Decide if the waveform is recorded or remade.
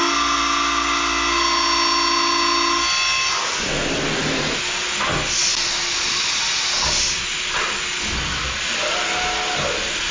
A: recorded